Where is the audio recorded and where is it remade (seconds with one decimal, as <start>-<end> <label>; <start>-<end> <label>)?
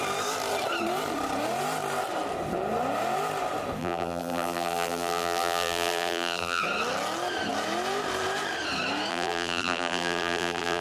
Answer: 0.0-3.8 recorded; 3.8-6.6 remade; 6.6-9.1 recorded; 9.1-10.8 remade